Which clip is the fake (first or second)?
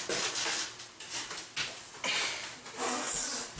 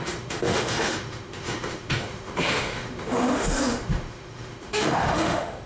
second